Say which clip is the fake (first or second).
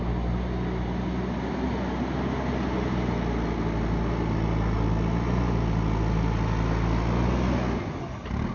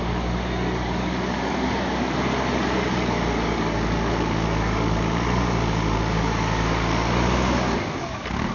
second